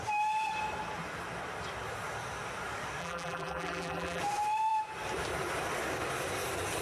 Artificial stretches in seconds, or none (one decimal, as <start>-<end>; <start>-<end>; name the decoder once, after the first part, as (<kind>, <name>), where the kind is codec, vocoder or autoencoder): 3.0-4.2 (vocoder, BigVGAN v2)